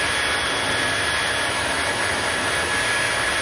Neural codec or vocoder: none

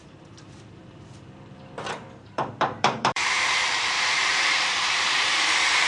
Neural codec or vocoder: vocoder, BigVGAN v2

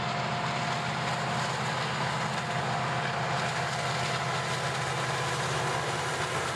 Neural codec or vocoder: none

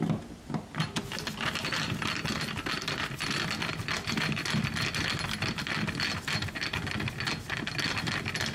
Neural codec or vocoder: none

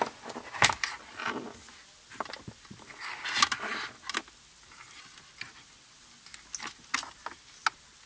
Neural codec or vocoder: none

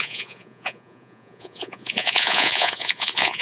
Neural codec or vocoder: vocoder, Vocos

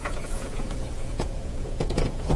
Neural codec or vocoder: vocoder, Vocos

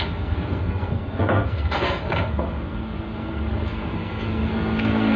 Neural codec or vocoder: codec, SNAC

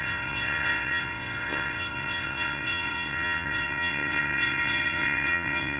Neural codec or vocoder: vocoder, WaveNeXt